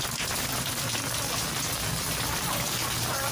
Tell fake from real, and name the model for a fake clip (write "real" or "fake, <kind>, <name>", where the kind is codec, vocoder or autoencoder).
fake, vocoder, BigVGAN v2